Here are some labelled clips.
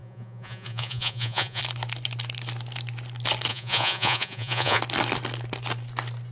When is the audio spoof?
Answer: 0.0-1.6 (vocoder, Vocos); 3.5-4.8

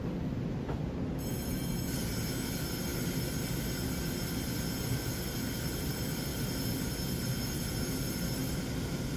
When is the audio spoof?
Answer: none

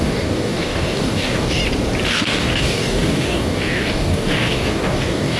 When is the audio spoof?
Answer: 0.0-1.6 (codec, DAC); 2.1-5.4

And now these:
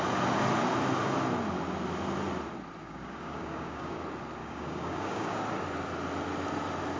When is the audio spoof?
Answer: 2.8-4.0 (codec, DAC); 4.4-5.4